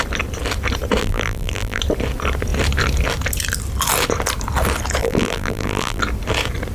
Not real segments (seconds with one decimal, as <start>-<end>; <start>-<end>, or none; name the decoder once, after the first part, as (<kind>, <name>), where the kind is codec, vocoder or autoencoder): 1.0-1.8 (vocoder, BigVGAN v2); 5.0-6.0